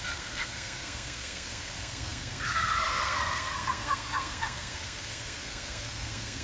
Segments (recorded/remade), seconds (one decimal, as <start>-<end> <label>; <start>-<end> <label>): 0.0-6.4 remade